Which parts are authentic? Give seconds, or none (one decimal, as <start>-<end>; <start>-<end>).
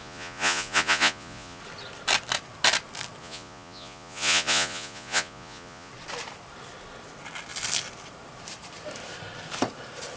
1.6-3.2; 5.9-10.2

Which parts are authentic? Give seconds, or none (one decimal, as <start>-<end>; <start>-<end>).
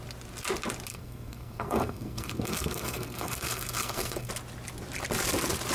0.0-0.9; 4.3-5.7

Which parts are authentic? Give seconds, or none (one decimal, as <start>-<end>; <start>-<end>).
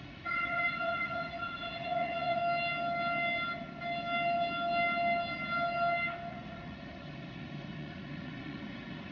2.4-6.3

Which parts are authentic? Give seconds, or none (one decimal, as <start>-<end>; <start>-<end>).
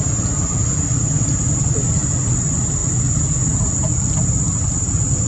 0.0-5.3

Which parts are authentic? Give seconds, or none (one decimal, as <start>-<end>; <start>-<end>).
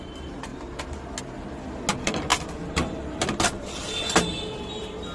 0.0-5.1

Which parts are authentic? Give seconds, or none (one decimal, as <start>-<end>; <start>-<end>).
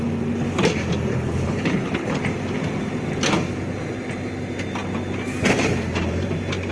0.0-1.1; 2.2-6.7